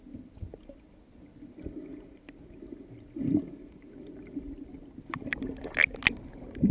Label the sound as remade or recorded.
recorded